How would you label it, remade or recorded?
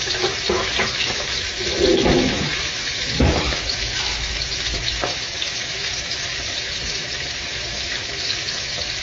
remade